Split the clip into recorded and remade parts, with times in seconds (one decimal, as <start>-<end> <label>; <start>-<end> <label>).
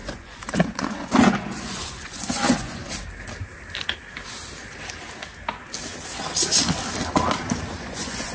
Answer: 0.0-2.8 remade; 2.8-7.8 recorded; 7.8-8.3 remade